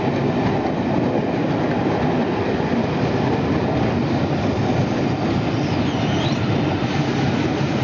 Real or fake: real